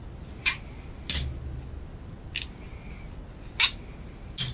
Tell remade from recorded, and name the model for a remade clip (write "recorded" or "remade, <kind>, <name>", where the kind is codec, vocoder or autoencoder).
recorded